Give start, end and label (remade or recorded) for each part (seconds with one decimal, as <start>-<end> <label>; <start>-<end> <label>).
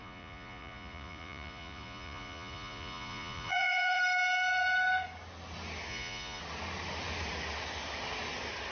0.0-4.0 remade; 4.0-5.9 recorded; 5.9-6.4 remade; 6.4-8.7 recorded